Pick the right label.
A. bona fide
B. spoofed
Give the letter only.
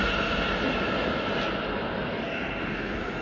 A